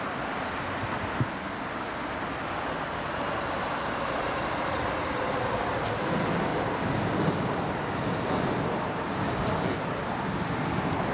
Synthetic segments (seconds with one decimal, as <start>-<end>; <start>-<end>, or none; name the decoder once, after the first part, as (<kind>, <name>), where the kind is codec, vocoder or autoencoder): none